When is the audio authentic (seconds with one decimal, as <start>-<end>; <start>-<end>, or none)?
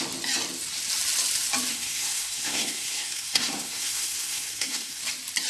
0.0-1.7; 5.0-5.5